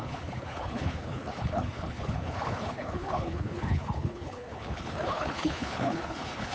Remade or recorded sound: remade